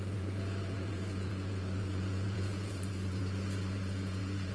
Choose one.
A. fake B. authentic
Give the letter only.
A